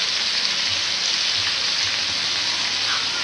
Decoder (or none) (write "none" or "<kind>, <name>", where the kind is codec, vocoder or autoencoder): none